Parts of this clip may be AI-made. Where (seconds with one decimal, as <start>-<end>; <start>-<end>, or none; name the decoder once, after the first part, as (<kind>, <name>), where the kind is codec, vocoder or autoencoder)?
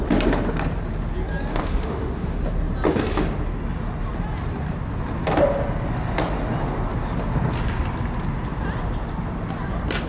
1.5-2.4 (autoencoder, DAC-VAE)